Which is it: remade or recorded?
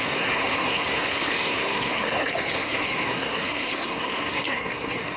remade